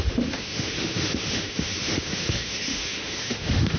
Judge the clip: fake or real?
fake